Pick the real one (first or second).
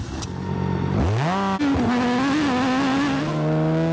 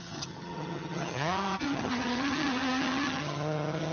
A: first